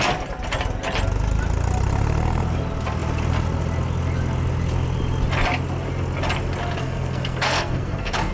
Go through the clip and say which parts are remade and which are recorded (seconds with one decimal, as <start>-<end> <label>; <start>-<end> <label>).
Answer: 0.0-6.8 recorded; 6.8-8.3 remade